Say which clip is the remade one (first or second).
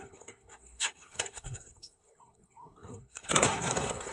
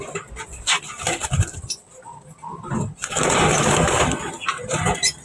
first